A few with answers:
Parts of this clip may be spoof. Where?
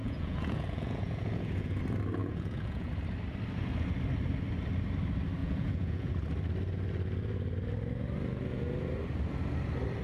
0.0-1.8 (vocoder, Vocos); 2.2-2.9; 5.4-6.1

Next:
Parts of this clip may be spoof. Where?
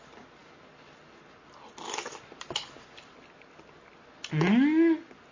none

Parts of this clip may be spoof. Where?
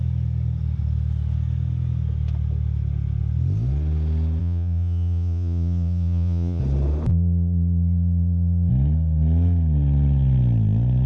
4.4-6.6 (vocoder, Vocos); 7.1-8.7